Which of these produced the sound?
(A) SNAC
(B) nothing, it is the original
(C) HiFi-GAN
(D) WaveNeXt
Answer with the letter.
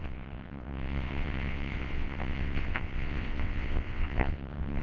D